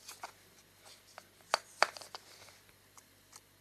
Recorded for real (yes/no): yes